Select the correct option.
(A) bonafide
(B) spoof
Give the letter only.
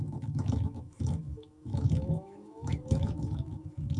B